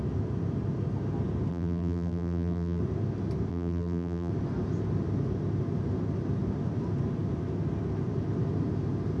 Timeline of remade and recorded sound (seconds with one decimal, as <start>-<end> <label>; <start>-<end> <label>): 0.0-1.5 recorded; 1.5-2.8 remade; 2.8-3.5 recorded; 3.5-4.3 remade; 4.3-9.2 recorded